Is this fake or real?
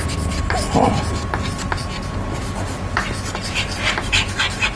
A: real